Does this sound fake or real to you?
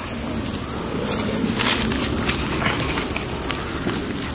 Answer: real